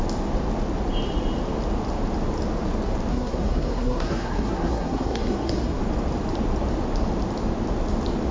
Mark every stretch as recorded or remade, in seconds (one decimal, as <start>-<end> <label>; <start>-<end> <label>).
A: 0.0-3.1 recorded; 3.1-5.8 remade; 5.8-8.3 recorded

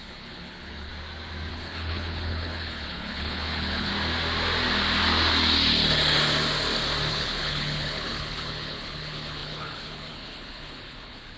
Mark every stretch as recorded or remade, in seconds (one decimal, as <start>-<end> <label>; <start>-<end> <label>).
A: 0.0-0.9 remade; 0.9-1.5 recorded; 1.5-3.9 remade; 3.9-7.1 recorded; 7.1-11.4 remade